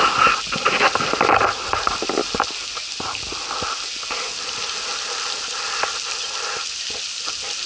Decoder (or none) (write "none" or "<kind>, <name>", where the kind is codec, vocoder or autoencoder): none